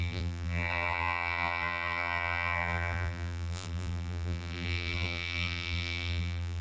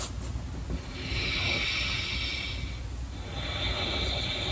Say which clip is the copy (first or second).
first